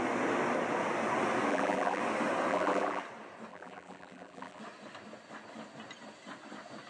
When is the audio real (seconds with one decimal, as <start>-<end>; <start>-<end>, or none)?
0.0-1.5; 2.0-2.5; 3.0-3.5; 4.6-6.9